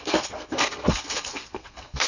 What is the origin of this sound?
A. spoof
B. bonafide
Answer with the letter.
A